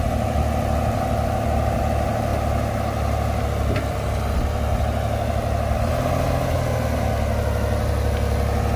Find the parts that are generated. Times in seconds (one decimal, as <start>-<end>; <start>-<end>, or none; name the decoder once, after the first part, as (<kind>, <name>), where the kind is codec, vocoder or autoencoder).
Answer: none